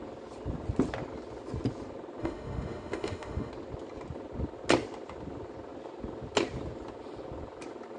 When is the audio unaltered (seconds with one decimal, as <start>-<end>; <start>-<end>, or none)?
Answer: 0.0-2.2; 3.5-8.0